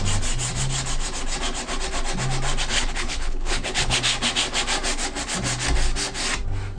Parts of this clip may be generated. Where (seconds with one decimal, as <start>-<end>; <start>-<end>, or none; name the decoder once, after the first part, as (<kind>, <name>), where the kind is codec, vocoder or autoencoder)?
2.7-4.0 (codec, HILCodec)